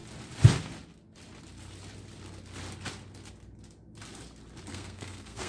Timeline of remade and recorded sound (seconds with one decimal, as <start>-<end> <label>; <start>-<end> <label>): 0.0-4.7 recorded; 4.7-5.5 remade